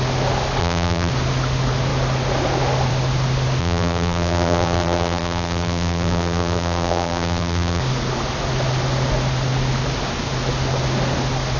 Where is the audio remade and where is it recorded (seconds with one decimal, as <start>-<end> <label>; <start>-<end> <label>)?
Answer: 0.0-0.6 recorded; 0.6-1.1 remade; 1.1-3.6 recorded; 3.6-7.8 remade; 7.8-11.6 recorded